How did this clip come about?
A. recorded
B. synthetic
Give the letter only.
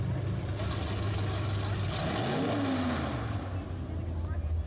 A